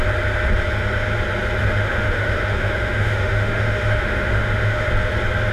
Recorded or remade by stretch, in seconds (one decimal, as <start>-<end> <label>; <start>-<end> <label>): 0.0-1.6 recorded; 1.6-4.9 remade; 4.9-5.5 recorded